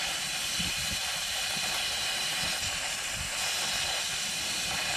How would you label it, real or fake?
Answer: real